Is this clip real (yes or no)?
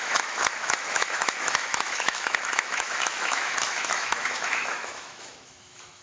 no